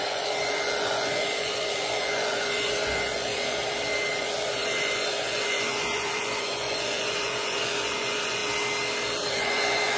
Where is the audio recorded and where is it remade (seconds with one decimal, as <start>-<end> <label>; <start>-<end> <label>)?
0.0-3.6 remade; 3.6-4.1 recorded; 4.1-8.4 remade; 8.4-9.3 recorded; 9.3-10.0 remade